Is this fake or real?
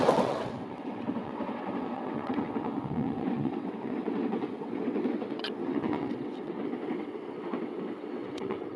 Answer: fake